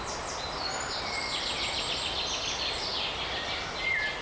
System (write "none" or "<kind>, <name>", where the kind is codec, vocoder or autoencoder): none